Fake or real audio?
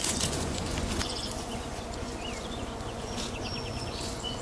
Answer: fake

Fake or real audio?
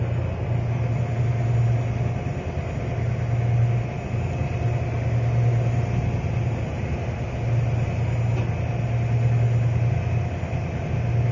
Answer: real